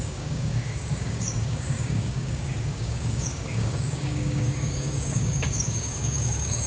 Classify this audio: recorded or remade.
remade